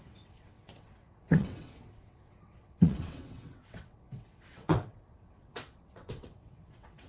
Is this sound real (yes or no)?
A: no